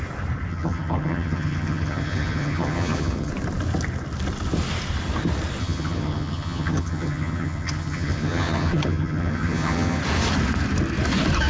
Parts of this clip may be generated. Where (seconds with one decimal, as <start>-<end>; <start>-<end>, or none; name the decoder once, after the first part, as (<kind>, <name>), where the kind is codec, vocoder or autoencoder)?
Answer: 0.5-3.3 (vocoder, HiFi-GAN); 5.6-10.0